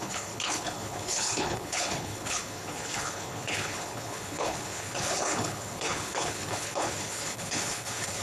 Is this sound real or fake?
fake